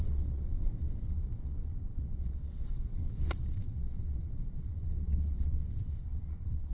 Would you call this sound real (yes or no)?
no